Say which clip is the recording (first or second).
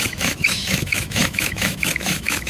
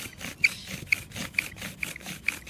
second